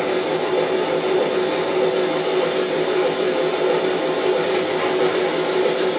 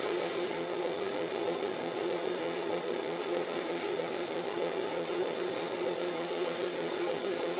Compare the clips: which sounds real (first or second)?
first